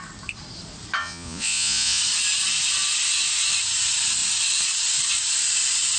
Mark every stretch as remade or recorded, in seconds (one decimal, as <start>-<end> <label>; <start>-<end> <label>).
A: 0.0-1.0 recorded; 1.0-2.0 remade; 2.0-6.0 recorded